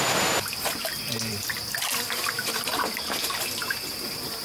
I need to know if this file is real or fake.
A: real